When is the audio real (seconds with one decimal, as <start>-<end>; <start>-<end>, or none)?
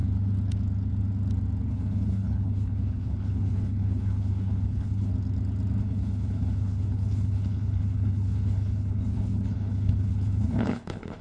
0.0-1.7; 5.1-5.8